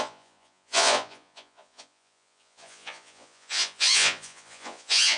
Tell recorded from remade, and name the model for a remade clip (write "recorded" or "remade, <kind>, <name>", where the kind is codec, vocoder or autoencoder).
remade, vocoder, Vocos